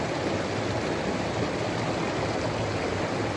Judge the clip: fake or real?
real